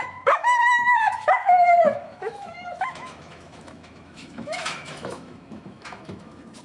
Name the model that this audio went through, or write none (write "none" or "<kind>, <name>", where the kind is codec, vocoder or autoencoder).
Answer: autoencoder, DAC-VAE